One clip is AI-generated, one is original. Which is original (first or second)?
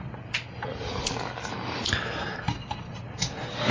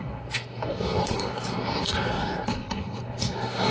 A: first